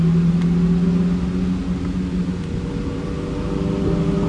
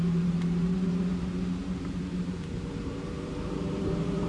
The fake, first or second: second